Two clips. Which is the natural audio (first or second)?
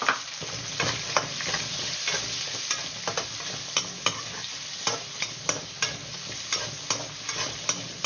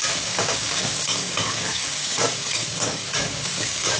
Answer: first